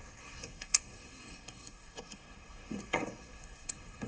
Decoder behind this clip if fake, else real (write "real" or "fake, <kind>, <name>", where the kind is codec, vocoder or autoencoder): fake, codec, SNAC